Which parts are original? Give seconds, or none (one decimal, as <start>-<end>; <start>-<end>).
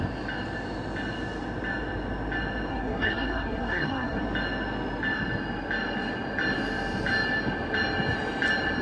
0.0-2.7; 4.2-8.8